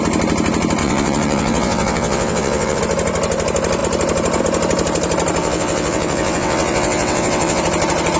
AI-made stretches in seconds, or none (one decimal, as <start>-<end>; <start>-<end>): 0.8-2.8; 5.4-7.6